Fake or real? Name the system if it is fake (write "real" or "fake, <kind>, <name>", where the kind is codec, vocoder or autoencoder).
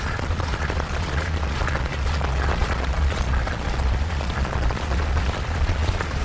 fake, vocoder, Vocos